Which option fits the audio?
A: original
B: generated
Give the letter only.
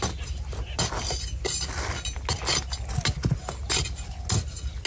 A